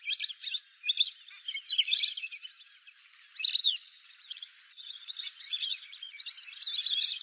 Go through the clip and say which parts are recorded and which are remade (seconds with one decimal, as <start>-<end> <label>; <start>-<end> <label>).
0.0-3.6 recorded; 3.6-6.2 remade; 6.2-7.2 recorded